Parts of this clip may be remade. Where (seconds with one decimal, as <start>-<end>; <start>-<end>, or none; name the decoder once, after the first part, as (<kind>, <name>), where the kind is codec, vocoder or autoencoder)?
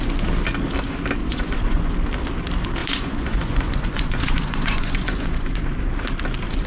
1.2-1.9 (vocoder, Vocos); 2.8-5.8